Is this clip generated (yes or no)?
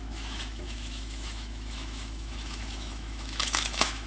yes